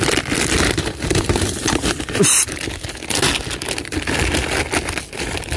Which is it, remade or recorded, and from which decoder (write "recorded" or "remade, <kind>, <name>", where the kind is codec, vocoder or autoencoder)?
recorded